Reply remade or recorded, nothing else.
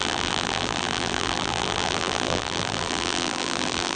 remade